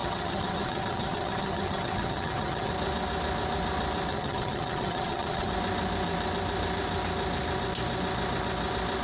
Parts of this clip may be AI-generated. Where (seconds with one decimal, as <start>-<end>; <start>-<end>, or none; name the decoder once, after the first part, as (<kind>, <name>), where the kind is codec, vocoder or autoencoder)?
0.0-2.7 (vocoder, HiFi-GAN); 4.1-5.5